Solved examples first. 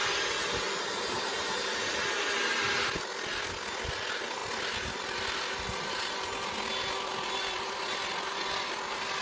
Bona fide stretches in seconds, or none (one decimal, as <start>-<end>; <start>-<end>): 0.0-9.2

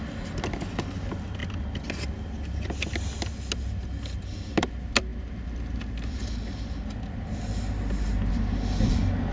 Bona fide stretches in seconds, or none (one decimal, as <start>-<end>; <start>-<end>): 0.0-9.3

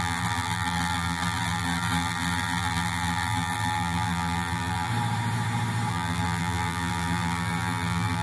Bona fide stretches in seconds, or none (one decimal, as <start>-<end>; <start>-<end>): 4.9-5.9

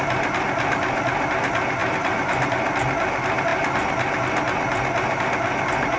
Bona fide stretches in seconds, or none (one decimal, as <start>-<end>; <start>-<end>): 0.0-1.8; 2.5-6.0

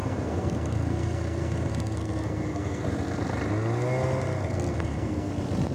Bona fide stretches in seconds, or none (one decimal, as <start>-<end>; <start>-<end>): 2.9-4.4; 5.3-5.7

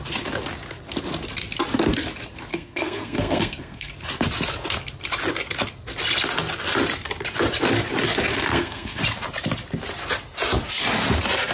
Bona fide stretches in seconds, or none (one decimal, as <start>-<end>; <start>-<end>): 0.0-2.5; 3.9-8.3; 9.0-11.5

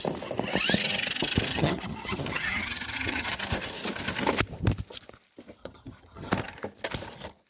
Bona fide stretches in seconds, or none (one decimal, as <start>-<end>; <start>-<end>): 0.0-1.5; 3.4-5.6; 6.3-7.5